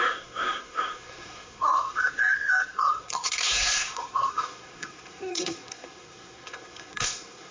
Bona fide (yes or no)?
no